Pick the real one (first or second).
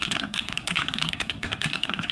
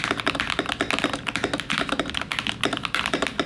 second